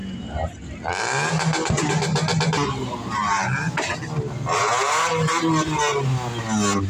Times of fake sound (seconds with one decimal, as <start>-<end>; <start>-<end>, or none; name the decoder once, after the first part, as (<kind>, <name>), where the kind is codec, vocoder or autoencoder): 0.0-1.0 (vocoder, BigVGAN v2)